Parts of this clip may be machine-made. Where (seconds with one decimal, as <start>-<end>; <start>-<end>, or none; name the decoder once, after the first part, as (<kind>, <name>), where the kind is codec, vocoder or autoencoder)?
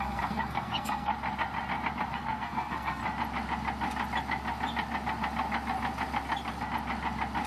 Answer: 0.0-1.1 (codec, SNAC); 2.1-3.0